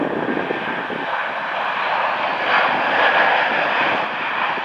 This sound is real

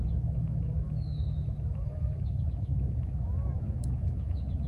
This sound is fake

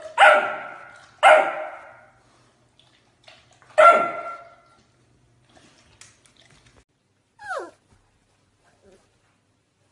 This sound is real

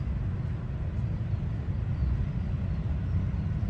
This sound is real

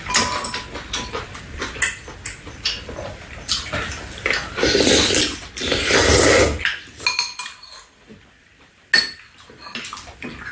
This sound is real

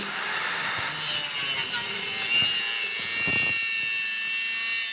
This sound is real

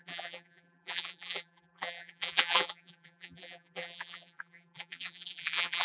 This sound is fake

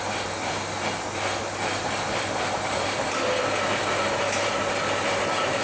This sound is real